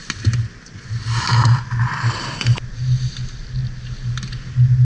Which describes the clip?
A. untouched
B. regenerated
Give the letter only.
A